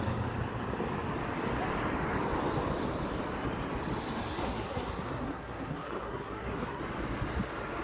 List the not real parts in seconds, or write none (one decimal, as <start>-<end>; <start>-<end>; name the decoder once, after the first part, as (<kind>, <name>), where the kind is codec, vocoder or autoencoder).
4.3-6.8 (codec, SNAC)